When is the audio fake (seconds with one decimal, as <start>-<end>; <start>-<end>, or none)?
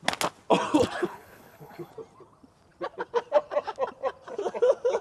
1.0-1.9